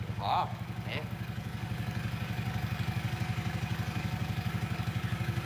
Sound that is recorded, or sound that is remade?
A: remade